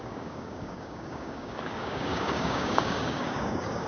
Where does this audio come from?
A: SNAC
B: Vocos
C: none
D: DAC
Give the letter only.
D